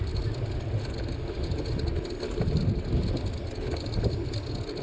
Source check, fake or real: real